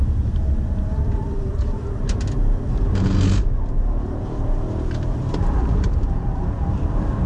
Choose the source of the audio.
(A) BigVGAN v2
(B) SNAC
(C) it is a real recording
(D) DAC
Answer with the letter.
A